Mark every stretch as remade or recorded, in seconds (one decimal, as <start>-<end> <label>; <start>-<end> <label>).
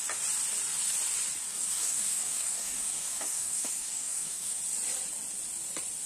0.0-1.5 recorded; 1.5-4.6 remade; 4.6-6.1 recorded